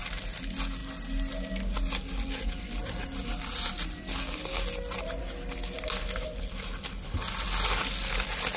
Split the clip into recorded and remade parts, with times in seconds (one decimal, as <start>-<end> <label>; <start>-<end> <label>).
0.0-8.6 recorded

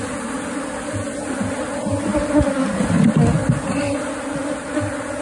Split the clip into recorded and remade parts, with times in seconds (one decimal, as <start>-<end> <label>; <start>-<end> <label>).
0.0-5.2 recorded

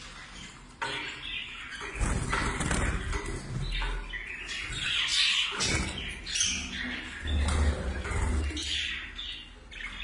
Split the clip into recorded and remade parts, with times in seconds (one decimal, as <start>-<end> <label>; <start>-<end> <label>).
0.0-1.4 recorded; 1.4-2.1 remade; 2.1-10.0 recorded

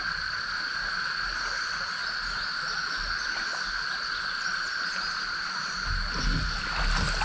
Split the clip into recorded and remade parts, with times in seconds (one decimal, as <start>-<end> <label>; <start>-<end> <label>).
0.0-7.2 recorded

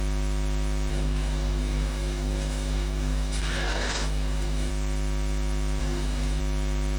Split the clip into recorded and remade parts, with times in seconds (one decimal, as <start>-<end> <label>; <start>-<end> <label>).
0.0-0.9 recorded; 0.9-4.7 remade; 4.7-5.8 recorded; 5.8-6.4 remade; 6.4-7.0 recorded